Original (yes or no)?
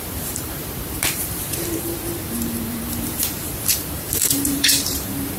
no